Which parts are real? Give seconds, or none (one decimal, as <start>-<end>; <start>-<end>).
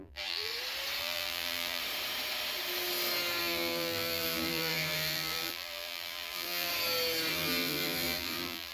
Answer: 0.5-1.0; 1.8-3.4; 6.7-7.3